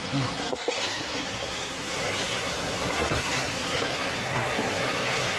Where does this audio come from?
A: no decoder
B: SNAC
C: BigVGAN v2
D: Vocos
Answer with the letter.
B